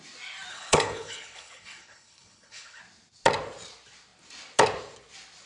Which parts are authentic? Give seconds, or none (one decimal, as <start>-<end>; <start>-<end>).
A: 0.0-0.5; 2.8-5.5